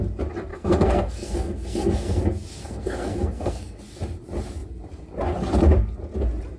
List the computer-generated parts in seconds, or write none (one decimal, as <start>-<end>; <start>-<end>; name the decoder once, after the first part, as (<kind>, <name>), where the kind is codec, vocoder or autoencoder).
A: 0.5-2.2 (codec, SNAC); 2.6-3.8